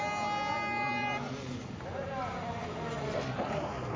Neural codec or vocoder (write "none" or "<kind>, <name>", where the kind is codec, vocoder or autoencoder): none